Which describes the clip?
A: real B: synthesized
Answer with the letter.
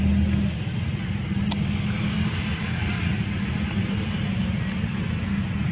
A